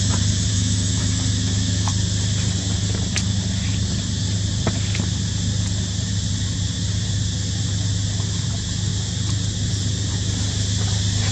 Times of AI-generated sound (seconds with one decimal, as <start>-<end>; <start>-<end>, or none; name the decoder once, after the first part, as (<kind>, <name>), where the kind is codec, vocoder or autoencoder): 0.5-1.9 (autoencoder, DAC-VAE)